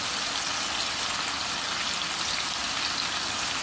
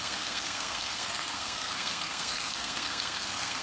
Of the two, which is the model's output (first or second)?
second